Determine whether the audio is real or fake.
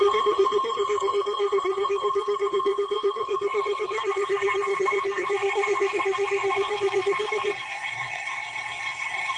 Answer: fake